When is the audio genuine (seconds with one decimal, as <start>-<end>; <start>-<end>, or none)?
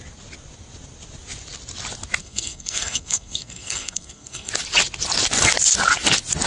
0.0-2.2; 4.5-6.5